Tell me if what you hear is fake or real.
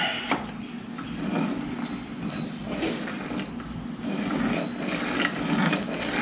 real